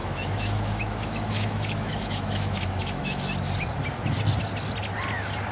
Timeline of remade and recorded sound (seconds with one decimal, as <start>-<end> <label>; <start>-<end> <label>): 0.0-3.3 remade; 3.3-5.5 recorded